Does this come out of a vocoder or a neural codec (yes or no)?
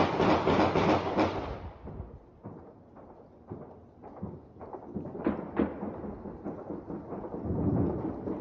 no